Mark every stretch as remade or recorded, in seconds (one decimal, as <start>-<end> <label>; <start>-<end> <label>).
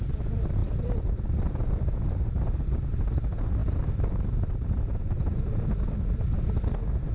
0.0-0.6 recorded; 0.6-1.2 remade; 1.2-3.6 recorded; 3.6-6.4 remade; 6.4-7.1 recorded